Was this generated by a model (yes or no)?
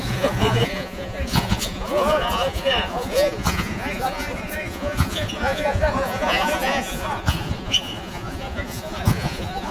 yes